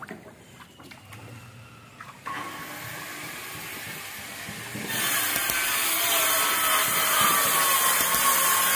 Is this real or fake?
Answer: real